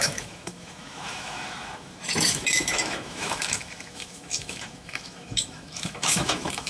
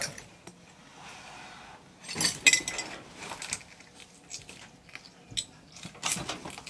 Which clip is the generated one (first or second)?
first